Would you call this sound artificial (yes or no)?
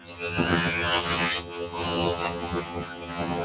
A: yes